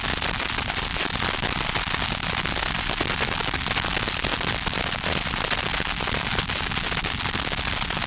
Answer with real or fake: real